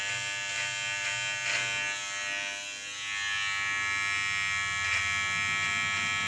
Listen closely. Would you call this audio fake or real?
real